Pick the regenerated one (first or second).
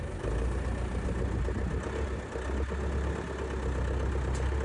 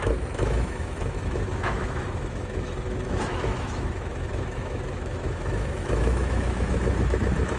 second